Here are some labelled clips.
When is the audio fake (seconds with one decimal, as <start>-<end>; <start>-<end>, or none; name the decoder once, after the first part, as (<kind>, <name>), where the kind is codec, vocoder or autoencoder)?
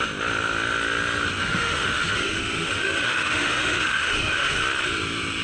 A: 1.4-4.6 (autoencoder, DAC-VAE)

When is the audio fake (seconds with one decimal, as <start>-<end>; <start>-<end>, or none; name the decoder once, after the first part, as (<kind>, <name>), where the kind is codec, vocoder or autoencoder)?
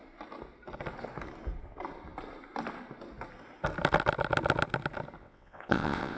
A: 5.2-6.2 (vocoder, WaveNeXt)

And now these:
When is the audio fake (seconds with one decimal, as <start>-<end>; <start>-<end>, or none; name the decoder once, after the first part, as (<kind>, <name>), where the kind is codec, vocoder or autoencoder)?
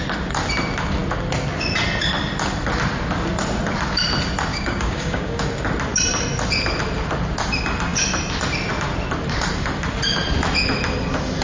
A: 4.5-5.4 (codec, DAC)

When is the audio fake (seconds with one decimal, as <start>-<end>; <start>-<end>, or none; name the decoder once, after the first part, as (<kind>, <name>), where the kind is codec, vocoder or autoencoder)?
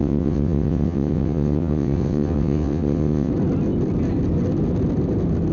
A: 0.0-3.3 (vocoder, WaveNeXt)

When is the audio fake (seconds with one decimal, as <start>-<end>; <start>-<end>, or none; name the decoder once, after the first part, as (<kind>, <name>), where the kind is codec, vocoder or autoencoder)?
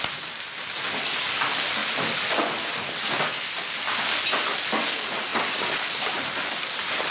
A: none